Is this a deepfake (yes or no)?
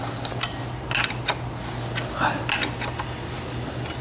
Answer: no